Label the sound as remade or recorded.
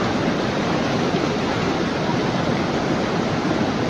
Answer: recorded